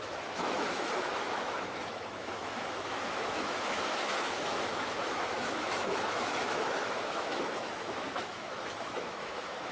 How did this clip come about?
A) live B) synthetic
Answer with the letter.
B